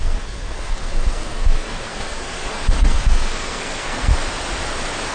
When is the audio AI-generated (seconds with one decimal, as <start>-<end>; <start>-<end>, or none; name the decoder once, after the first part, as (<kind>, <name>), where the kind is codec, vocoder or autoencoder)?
0.0-4.1 (codec, SNAC)